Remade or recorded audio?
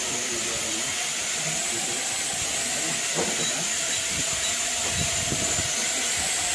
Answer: recorded